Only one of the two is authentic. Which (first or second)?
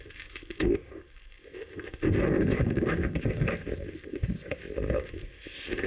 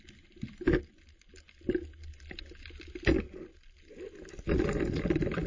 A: second